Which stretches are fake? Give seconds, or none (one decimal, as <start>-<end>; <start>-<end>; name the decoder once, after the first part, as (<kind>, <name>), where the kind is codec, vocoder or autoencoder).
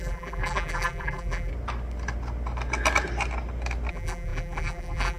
0.0-1.5 (vocoder, BigVGAN v2); 3.9-5.2